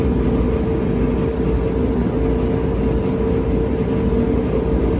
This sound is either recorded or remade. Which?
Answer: recorded